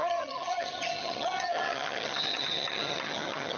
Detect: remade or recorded remade